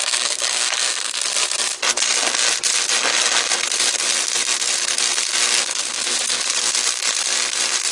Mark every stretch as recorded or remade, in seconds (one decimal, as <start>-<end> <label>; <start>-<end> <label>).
0.0-1.2 remade; 1.2-5.6 recorded; 5.6-6.5 remade; 6.5-7.9 recorded